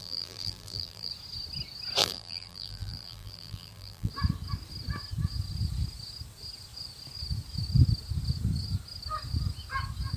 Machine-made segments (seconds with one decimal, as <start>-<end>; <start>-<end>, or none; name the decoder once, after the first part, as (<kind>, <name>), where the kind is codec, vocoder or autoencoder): 0.0-1.1 (vocoder, BigVGAN v2); 2.0-4.1